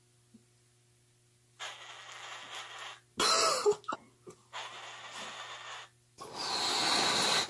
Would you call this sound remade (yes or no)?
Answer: no